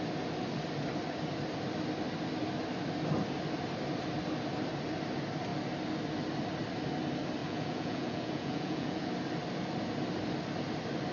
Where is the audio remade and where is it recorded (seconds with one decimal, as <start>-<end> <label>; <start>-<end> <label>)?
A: 0.0-7.4 recorded; 7.4-9.1 remade; 9.1-11.1 recorded